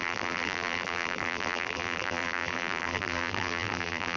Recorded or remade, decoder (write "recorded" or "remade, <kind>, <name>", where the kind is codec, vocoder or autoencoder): remade, vocoder, BigVGAN v2